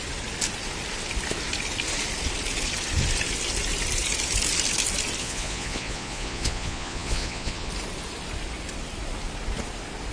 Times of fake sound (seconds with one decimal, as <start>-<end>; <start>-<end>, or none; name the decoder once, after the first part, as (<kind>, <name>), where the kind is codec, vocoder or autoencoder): 5.2-7.7 (vocoder, Vocos)